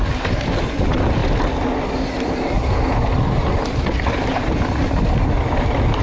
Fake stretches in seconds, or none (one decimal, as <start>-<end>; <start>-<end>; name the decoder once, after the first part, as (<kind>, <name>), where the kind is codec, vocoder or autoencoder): none